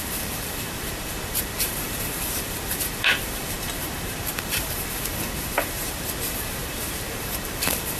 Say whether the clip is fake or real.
fake